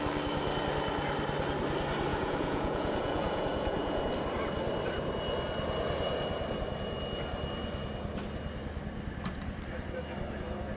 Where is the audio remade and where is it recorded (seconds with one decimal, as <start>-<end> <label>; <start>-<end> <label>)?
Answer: 0.0-2.1 recorded; 2.1-4.0 remade; 4.0-10.8 recorded